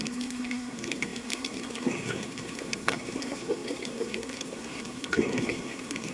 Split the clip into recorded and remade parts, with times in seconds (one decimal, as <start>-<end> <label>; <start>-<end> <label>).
0.0-6.1 remade